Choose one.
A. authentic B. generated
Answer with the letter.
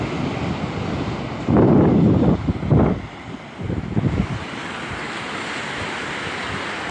B